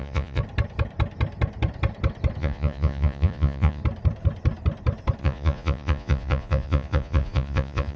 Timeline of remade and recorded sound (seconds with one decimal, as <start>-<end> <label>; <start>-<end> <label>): 0.0-0.4 remade; 0.4-2.4 recorded; 2.4-3.8 remade; 3.8-5.2 recorded; 5.2-8.0 remade

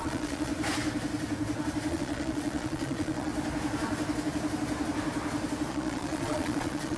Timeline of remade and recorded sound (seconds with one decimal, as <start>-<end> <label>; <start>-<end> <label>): 0.0-0.5 remade; 0.5-1.9 recorded; 1.9-3.3 remade; 3.3-5.7 recorded; 5.7-7.0 remade